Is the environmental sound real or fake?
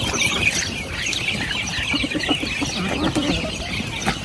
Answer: real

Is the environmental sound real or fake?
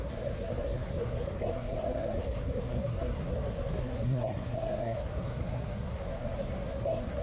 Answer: fake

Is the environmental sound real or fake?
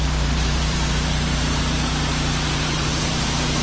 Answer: fake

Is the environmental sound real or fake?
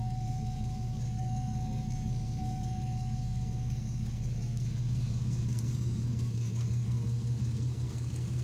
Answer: fake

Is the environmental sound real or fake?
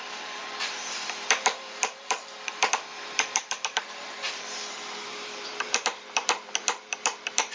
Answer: fake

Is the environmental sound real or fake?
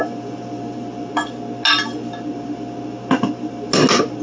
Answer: real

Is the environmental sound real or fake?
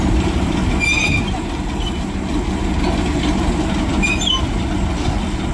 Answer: real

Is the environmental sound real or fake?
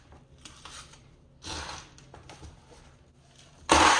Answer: real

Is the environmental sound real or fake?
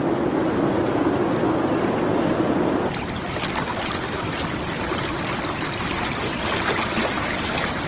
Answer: real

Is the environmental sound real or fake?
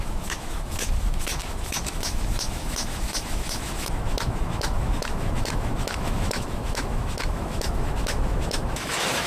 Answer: fake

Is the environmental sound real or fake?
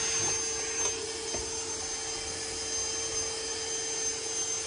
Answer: real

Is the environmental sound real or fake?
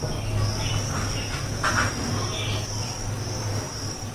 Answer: real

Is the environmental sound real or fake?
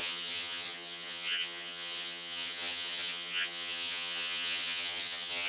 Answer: fake